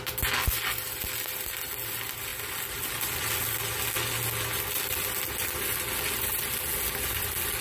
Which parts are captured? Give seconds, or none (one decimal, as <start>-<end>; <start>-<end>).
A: 0.0-7.6